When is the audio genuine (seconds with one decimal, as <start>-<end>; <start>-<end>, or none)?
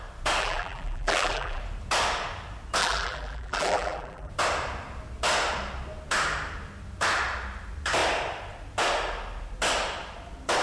0.0-0.4; 1.6-2.8; 4.3-10.6